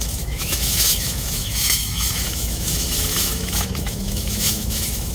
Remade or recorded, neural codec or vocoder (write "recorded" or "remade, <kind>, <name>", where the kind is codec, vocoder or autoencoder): remade, autoencoder, DAC-VAE